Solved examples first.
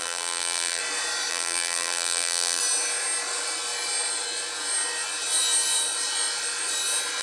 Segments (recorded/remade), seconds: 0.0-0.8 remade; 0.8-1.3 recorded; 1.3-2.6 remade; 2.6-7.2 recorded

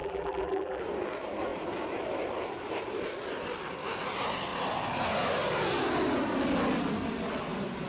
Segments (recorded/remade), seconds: 0.0-0.8 remade; 0.8-7.9 recorded

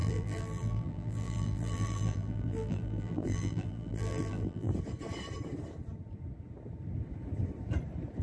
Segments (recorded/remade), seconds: 0.0-4.7 remade; 4.7-8.2 recorded